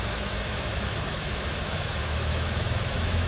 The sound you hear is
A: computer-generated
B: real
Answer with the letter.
A